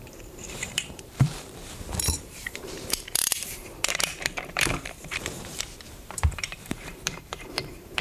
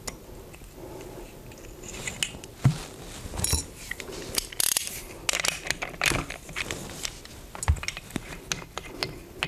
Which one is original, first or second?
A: second